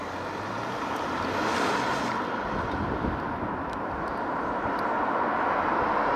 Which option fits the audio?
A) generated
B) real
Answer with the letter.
B